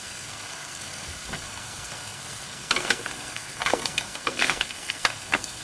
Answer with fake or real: fake